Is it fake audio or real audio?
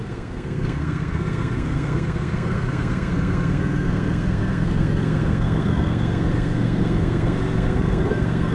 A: fake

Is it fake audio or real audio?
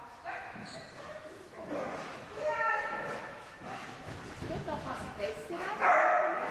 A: fake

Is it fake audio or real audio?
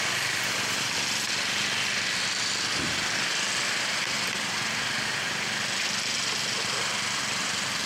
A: real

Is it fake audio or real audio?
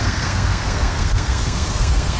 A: fake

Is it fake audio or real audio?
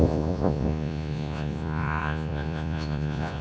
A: fake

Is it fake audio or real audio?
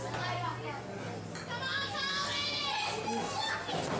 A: real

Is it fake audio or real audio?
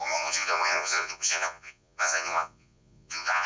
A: fake